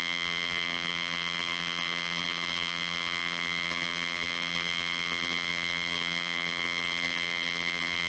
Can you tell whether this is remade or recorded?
remade